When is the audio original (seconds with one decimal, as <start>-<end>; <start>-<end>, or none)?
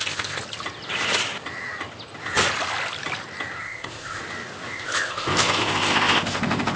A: 0.4-3.6; 4.2-4.7